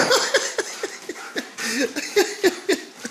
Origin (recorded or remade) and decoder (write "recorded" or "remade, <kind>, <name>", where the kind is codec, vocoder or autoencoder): remade, vocoder, BigVGAN v2